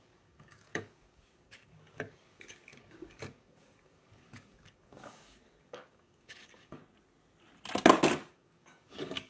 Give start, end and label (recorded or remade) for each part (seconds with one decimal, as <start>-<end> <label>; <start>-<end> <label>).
0.0-6.8 remade; 6.8-8.3 recorded; 8.3-9.3 remade